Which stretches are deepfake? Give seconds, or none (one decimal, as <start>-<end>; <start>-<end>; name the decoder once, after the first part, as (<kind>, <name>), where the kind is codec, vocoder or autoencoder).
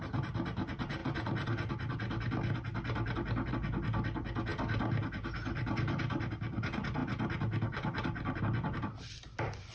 none